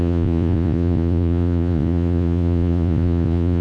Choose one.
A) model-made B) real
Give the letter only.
A